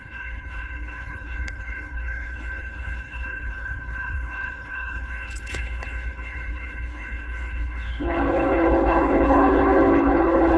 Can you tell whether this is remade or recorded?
remade